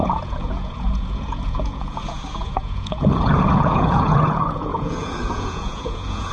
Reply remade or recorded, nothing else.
remade